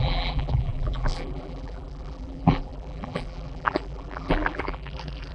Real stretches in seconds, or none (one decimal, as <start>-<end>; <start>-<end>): none